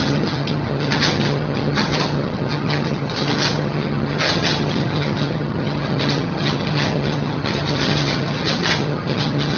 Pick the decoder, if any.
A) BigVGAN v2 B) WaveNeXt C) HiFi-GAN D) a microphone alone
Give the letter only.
C